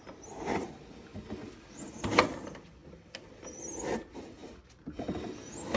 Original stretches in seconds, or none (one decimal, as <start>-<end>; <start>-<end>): 0.0-5.8